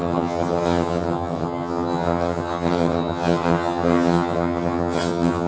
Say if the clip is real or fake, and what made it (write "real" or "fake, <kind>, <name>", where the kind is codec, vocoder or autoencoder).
fake, vocoder, HiFi-GAN